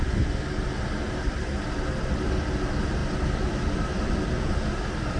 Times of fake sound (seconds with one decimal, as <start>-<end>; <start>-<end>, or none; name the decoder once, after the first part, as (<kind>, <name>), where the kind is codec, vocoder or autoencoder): 3.0-5.2 (vocoder, BigVGAN v2)